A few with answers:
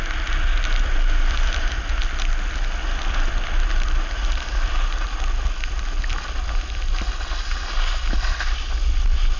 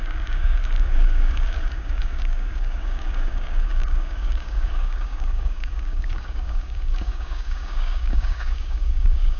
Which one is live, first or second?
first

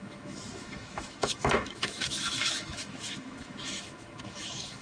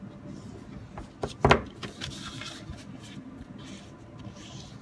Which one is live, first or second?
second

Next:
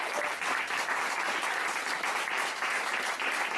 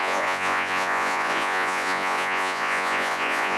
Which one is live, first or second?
first